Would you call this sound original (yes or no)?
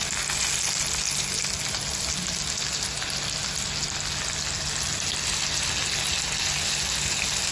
yes